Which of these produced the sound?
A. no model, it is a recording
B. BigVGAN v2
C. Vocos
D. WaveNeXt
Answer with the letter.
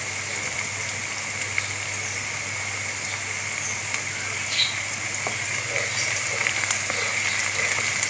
A